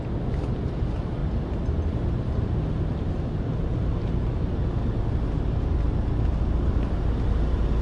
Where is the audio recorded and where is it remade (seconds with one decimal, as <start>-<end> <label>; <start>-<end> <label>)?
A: 0.0-7.8 recorded